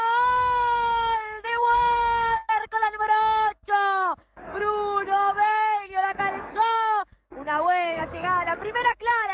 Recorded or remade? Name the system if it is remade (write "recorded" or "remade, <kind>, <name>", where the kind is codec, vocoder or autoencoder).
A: remade, codec, DAC